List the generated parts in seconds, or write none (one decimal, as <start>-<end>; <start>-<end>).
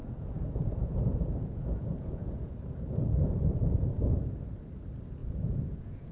0.0-2.5; 3.2-4.4; 5.2-6.1